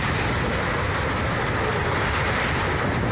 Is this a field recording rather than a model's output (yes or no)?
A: yes